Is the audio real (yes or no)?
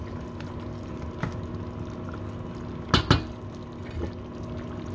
yes